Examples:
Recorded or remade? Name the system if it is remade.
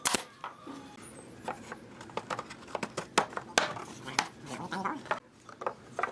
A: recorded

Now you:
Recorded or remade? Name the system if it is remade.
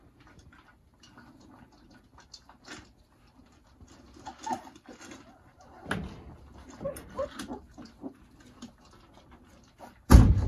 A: recorded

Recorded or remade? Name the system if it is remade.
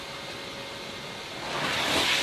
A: recorded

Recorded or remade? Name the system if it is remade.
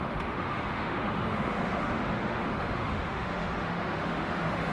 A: remade, autoencoder, DAC-VAE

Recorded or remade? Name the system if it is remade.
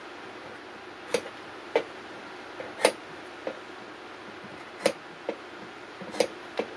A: recorded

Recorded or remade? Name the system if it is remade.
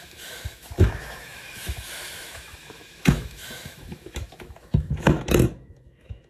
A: remade, autoencoder, DAC-VAE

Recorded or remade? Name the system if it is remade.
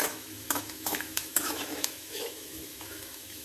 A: remade, autoencoder, DAC-VAE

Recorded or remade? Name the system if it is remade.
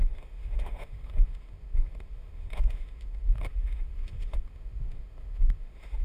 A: remade, autoencoder, DAC-VAE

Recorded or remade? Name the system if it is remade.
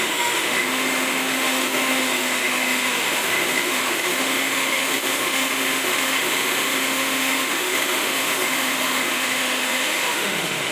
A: remade, autoencoder, DAC-VAE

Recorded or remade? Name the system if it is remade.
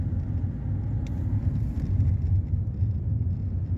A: recorded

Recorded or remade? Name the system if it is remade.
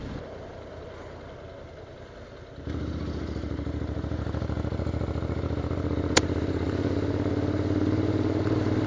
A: recorded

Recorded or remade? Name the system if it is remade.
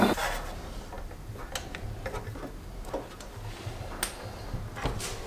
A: recorded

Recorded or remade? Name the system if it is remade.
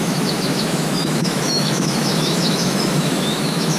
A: remade, autoencoder, DAC-VAE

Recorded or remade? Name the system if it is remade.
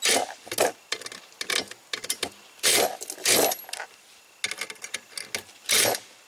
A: recorded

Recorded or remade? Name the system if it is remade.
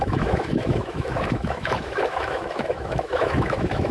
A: remade, autoencoder, DAC-VAE